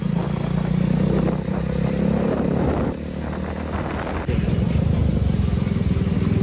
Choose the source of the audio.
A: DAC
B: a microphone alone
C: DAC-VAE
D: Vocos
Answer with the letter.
B